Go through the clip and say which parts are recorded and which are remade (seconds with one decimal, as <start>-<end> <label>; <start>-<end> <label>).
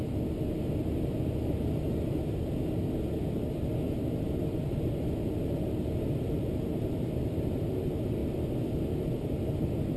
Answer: 0.0-10.0 recorded